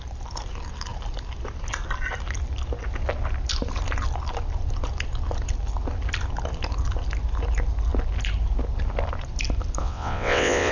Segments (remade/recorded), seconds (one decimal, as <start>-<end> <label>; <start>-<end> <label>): 0.0-9.8 recorded; 9.8-10.7 remade